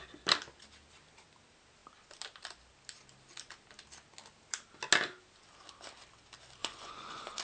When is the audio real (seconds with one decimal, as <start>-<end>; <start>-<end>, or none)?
0.0-6.6